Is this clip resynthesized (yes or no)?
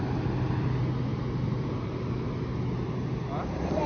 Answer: no